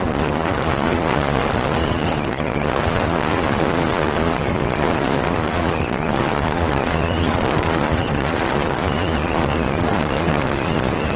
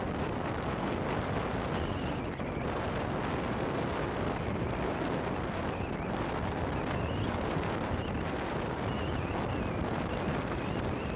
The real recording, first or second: second